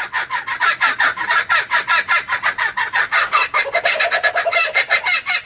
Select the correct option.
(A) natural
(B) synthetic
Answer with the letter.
A